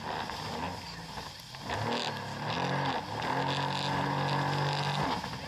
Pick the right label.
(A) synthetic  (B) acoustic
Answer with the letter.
B